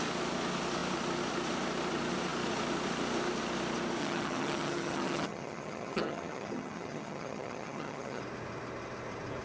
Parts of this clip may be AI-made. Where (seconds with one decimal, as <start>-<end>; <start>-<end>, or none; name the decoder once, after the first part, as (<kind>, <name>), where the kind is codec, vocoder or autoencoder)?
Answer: 4.0-8.2 (vocoder, HiFi-GAN)